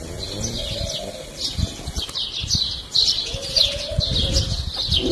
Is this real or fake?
real